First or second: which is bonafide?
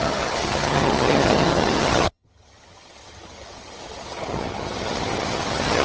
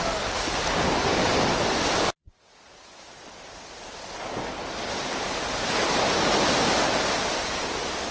second